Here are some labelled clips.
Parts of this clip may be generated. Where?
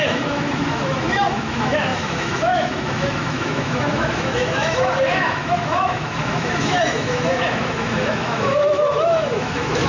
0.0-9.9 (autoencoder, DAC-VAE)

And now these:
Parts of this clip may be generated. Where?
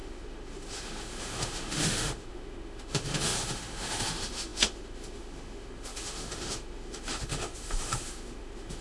0.0-8.8 (autoencoder, DAC-VAE)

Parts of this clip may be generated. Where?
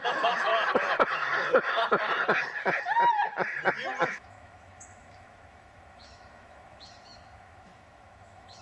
0.0-0.5 (autoencoder, DAC-VAE); 4.0-8.6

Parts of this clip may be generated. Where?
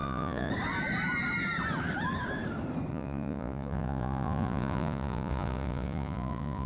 0.0-0.5 (vocoder, Vocos); 2.9-6.7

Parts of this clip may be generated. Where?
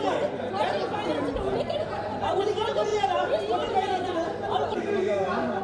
2.9-5.6 (vocoder, BigVGAN v2)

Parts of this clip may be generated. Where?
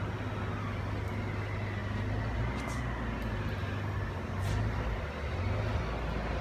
none